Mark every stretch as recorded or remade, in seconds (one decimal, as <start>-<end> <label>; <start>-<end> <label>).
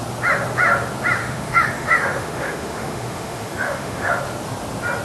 0.0-1.2 recorded; 1.2-4.2 remade; 4.2-5.0 recorded